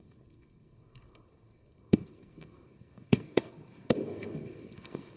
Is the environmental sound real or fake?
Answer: fake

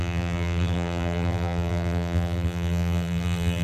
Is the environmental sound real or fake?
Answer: fake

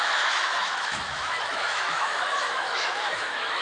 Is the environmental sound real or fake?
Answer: fake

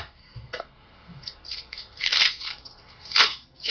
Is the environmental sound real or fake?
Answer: fake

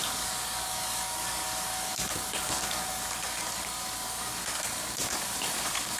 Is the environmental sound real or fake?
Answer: fake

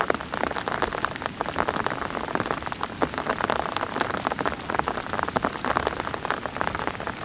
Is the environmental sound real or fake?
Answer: real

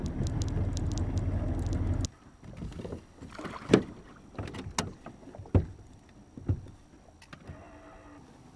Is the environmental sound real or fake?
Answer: real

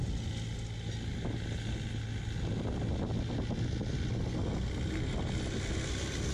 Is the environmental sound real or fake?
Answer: real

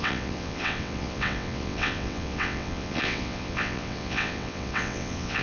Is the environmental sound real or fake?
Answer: fake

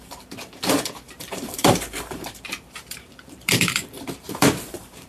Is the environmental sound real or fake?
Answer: fake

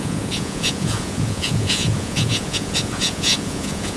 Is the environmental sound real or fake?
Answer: fake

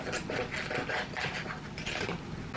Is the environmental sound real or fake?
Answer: real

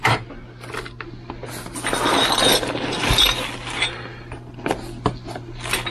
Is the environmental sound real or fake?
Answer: real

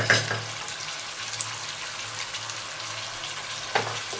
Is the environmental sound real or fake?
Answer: real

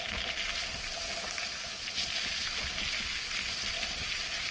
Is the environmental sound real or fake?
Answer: real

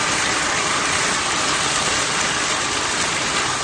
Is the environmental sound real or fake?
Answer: real